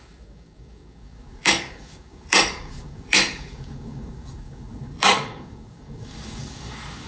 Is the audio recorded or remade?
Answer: remade